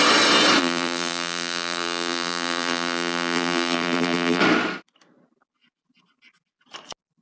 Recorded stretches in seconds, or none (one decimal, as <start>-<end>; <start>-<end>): 0.0-0.6; 4.4-7.2